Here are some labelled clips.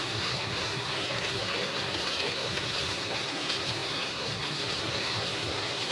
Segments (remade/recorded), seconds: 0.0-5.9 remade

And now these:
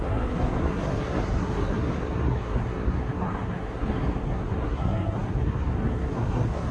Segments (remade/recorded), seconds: 0.0-6.7 remade

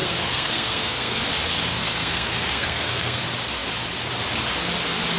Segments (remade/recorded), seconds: 0.0-1.2 remade; 1.2-1.8 recorded; 1.8-3.2 remade; 3.2-5.2 recorded

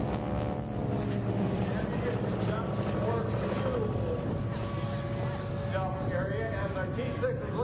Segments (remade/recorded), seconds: 0.0-7.6 recorded

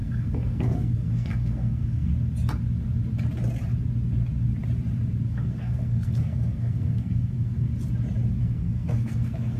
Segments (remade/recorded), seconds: 0.0-2.1 remade; 2.1-5.3 recorded; 5.3-7.7 remade; 7.7-8.4 recorded; 8.4-9.6 remade

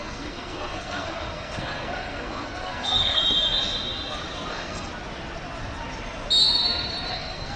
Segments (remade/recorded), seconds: 0.0-3.2 remade; 3.2-4.5 recorded; 4.5-4.9 remade; 4.9-7.1 recorded; 7.1-7.6 remade

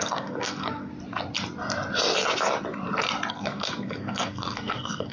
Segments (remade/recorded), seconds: 0.0-0.9 remade; 0.9-3.3 recorded; 3.3-5.1 remade

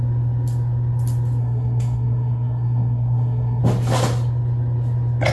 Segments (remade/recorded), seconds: 0.0-1.4 recorded; 1.4-3.6 remade; 3.6-5.3 recorded